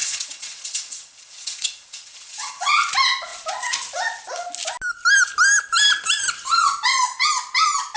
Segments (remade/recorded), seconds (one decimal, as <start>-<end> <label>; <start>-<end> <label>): 0.0-2.7 remade; 2.7-8.0 recorded